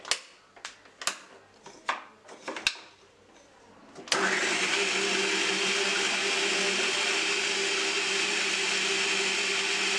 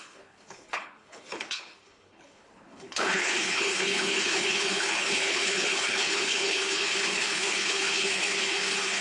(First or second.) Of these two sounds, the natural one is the first